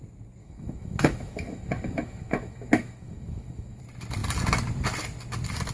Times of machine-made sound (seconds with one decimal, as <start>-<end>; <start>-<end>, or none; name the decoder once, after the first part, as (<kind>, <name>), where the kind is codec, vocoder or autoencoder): 0.4-3.8 (autoencoder, DAC-VAE)